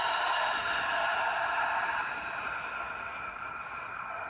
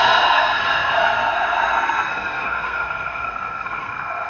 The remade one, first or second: second